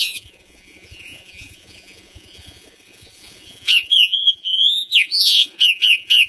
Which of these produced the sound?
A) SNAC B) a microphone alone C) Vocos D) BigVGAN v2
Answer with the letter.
C